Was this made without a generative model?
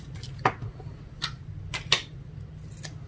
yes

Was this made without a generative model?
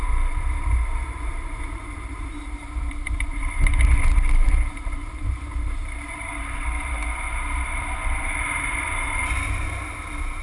no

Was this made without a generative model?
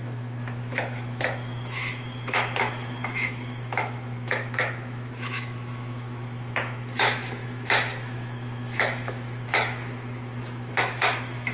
no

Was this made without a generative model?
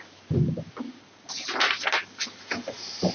yes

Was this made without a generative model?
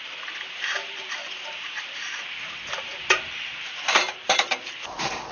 no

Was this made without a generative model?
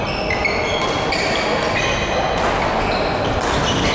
yes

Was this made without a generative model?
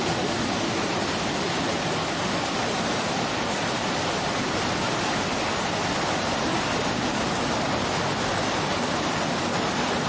yes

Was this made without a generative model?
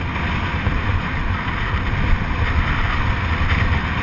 yes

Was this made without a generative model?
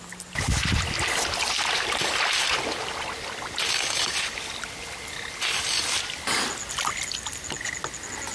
yes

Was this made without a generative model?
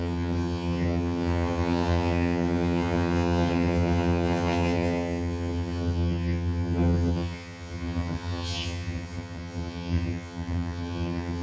no